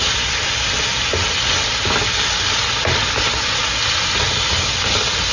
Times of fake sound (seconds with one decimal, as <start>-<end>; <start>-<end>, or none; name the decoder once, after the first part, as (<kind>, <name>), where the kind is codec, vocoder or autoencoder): none

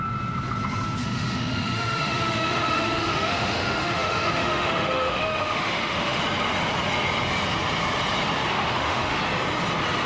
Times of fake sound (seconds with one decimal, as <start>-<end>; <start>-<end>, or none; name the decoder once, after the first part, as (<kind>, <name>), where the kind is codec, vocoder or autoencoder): 1.0-6.2 (autoencoder, DAC-VAE); 8.5-9.2

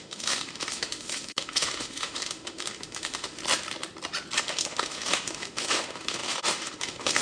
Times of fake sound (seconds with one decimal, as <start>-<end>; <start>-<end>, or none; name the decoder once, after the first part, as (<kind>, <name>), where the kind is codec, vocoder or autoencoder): 0.0-3.4 (autoencoder, DAC-VAE); 4.4-7.2